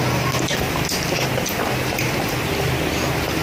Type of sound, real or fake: real